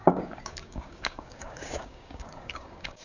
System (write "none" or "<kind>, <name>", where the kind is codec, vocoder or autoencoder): codec, DAC